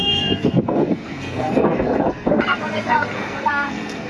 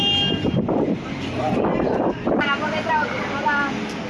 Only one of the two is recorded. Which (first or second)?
second